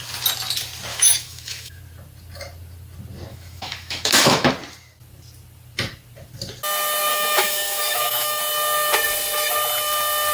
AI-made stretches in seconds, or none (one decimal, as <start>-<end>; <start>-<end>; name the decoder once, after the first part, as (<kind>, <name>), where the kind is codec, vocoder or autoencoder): 0.9-1.8 (autoencoder, DAC-VAE); 3.3-4.5; 7.1-8.4